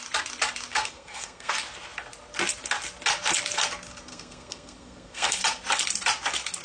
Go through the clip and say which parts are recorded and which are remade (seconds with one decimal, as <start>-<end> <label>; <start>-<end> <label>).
0.0-0.7 recorded; 0.7-1.5 remade; 1.5-4.1 recorded; 4.1-5.4 remade; 5.4-6.6 recorded